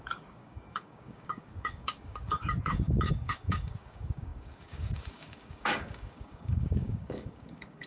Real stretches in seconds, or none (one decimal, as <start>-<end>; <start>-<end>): none